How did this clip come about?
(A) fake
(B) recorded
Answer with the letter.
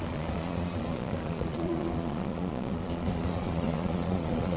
A